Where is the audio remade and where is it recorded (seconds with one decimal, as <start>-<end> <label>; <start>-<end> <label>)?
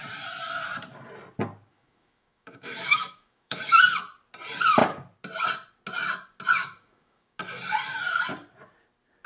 0.0-1.7 recorded; 1.7-3.6 remade; 3.6-6.6 recorded; 6.6-7.4 remade; 7.4-9.3 recorded